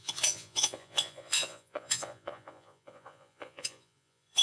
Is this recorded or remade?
remade